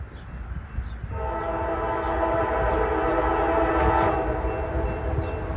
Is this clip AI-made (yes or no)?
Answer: no